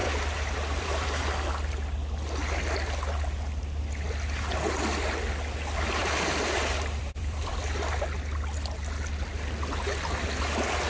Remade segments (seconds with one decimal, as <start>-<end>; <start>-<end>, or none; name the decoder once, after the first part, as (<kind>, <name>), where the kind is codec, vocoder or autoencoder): 0.0-1.2 (vocoder, BigVGAN v2); 6.0-7.5

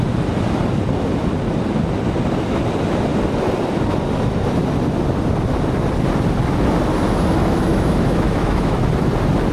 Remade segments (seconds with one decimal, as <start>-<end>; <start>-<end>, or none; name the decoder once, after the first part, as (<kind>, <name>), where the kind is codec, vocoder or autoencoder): 7.4-8.8 (autoencoder, DAC-VAE)

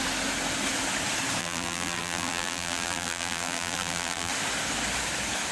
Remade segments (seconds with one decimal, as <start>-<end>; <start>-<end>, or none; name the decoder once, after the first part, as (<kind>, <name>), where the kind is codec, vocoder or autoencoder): 1.4-4.3 (vocoder, BigVGAN v2)

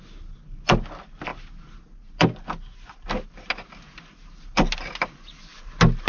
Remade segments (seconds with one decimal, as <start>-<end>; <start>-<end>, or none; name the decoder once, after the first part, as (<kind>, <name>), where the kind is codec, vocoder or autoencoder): none

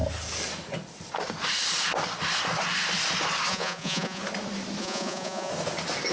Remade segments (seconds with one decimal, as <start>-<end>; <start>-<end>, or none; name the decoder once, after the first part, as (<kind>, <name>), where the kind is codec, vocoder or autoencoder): 3.5-4.2 (vocoder, Vocos); 4.8-5.5

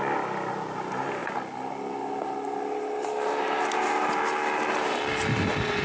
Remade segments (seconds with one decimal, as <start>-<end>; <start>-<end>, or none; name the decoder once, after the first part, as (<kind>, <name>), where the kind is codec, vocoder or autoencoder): none

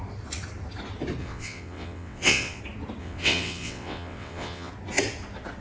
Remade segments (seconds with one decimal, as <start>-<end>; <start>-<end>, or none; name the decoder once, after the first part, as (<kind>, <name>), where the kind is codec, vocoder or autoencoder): 1.2-2.6 (vocoder, WaveNeXt); 3.0-4.7

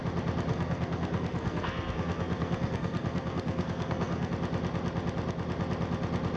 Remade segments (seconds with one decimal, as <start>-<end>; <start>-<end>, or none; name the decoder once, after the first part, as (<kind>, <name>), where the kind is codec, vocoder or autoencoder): 0.5-4.3 (codec, SNAC)